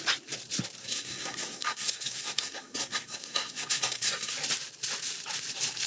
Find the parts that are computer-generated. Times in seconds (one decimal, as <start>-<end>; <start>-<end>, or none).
0.8-4.3